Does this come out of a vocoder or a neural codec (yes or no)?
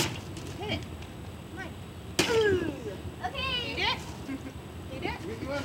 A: no